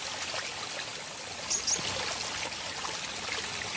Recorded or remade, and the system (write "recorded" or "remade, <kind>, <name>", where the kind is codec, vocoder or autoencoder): recorded